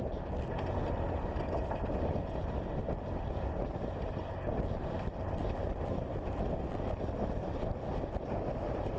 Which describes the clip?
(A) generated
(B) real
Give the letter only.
B